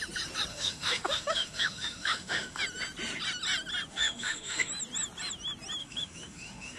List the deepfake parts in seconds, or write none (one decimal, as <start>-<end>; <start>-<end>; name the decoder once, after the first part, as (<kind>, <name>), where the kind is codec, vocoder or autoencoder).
0.5-2.6 (autoencoder, DAC-VAE); 3.9-4.7; 5.8-6.8